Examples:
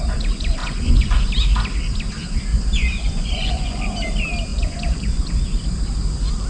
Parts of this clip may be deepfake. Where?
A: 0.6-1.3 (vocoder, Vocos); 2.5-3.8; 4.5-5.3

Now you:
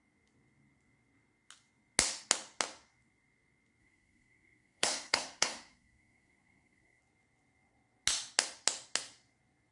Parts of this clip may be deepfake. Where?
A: 3.8-7.0 (codec, SNAC)

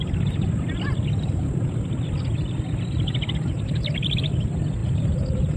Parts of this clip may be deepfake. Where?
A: none

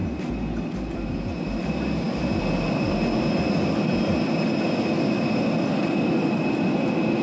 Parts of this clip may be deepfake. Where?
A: none

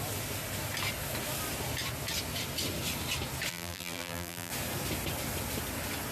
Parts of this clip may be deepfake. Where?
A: 3.5-4.5 (vocoder, BigVGAN v2)